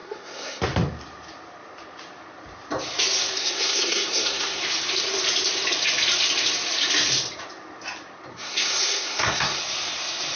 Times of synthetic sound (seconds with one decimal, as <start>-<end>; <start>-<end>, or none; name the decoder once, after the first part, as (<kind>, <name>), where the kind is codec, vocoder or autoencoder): 0.0-0.6 (codec, SNAC); 3.4-4.6; 8.3-9.6